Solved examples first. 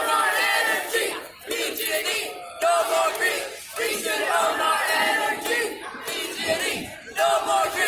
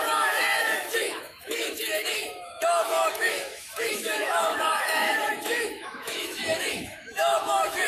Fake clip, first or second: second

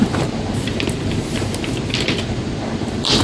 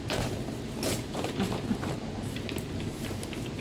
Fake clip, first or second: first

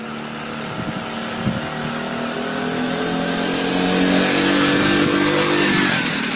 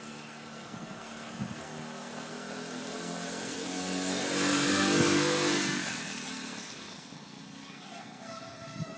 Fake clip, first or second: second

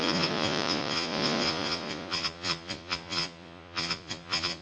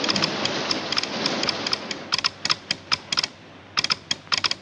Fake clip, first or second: first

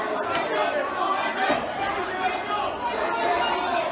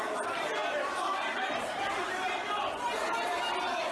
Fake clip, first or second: second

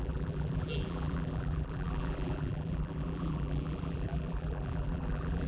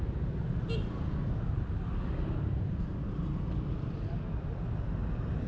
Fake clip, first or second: first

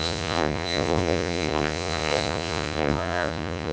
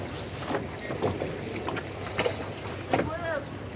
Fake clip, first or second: first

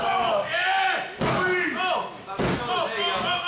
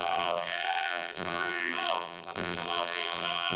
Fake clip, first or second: second